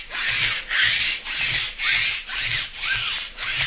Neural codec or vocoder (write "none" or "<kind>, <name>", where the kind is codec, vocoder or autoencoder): none